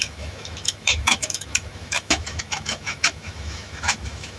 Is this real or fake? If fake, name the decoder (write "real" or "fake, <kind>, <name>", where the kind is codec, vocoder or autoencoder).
fake, autoencoder, DAC-VAE